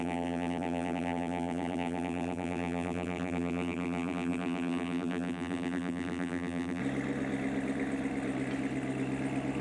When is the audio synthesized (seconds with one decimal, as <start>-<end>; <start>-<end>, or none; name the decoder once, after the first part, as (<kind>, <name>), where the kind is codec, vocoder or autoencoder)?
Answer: 0.0-6.8 (vocoder, BigVGAN v2)